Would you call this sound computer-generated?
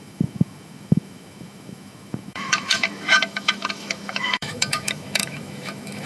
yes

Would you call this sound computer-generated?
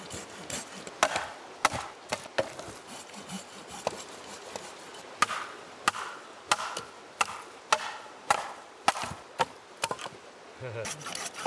no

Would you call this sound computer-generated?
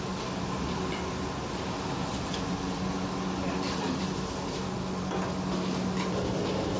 no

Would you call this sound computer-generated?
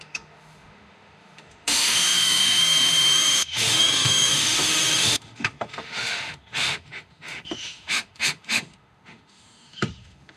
yes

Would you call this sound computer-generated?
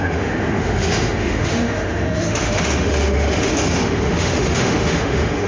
yes